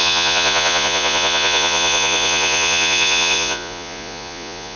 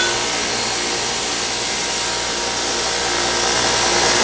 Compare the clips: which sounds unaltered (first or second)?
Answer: second